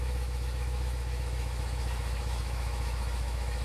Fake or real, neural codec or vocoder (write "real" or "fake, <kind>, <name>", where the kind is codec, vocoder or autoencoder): fake, autoencoder, DAC-VAE